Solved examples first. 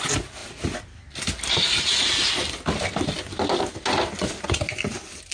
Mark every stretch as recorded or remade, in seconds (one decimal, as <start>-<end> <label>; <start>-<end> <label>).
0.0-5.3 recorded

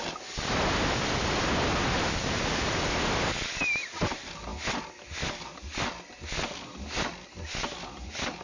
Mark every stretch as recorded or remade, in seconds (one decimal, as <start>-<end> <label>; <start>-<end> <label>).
0.0-8.4 recorded

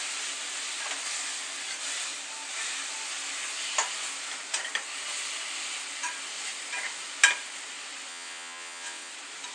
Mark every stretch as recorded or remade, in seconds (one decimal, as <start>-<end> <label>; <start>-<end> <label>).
0.0-8.1 recorded; 8.1-9.1 remade; 9.1-9.5 recorded

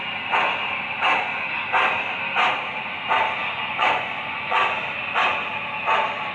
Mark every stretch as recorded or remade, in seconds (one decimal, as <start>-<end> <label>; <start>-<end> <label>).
0.0-3.4 recorded; 3.4-4.8 remade; 4.8-6.3 recorded